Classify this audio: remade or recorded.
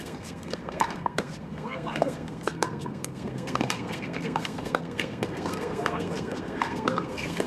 remade